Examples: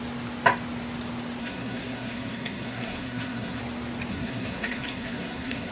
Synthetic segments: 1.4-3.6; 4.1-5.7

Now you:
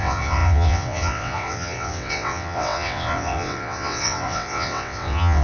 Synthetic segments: 0.0-5.4